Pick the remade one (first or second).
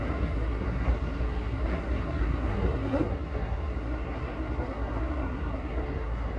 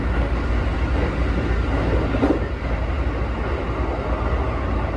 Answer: first